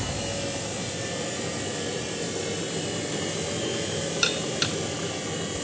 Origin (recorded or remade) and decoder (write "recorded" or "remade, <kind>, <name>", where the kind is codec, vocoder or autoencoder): recorded